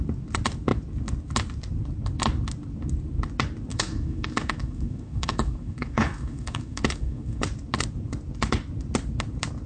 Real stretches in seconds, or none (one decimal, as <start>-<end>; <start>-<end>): 0.0-3.7; 7.4-9.7